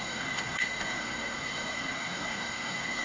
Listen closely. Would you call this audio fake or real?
fake